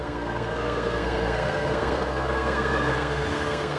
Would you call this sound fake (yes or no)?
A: yes